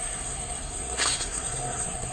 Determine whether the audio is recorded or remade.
remade